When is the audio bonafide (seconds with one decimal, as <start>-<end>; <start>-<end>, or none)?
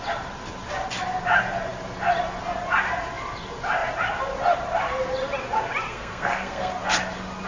0.0-5.9; 6.7-7.5